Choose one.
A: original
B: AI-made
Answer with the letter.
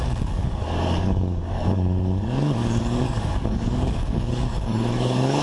B